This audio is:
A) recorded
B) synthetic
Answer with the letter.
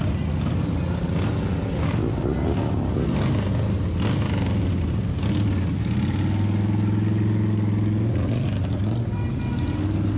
A